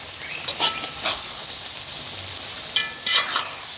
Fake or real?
real